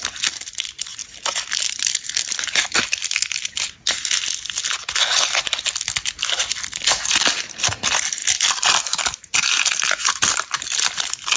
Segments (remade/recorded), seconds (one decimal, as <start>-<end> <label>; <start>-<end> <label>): 0.0-11.4 recorded